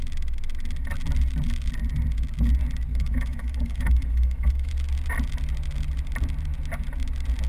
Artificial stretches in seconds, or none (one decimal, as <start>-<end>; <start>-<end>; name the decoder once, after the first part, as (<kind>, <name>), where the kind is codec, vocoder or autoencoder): 2.9-4.7 (autoencoder, DAC-VAE)